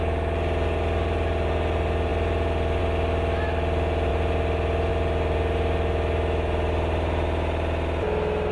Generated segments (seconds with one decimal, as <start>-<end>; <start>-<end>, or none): none